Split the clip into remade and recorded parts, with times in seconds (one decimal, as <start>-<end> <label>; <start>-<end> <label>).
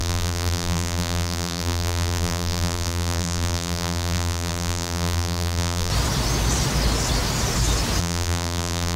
0.0-5.9 remade; 5.9-8.0 recorded; 8.0-9.0 remade